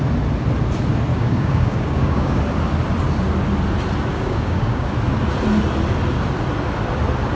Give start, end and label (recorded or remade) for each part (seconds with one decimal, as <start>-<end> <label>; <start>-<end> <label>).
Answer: 0.0-1.1 recorded; 1.1-2.4 remade; 2.4-4.1 recorded; 4.1-4.9 remade; 4.9-7.4 recorded